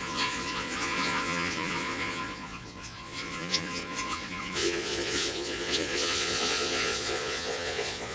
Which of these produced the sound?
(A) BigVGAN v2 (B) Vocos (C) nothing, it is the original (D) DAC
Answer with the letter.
B